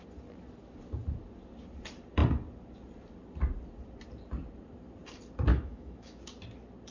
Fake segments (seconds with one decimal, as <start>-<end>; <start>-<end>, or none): 5.5-6.2